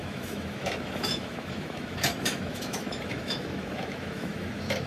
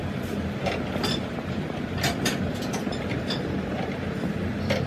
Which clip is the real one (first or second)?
second